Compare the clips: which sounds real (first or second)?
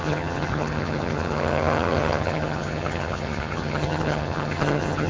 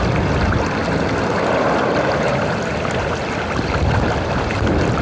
second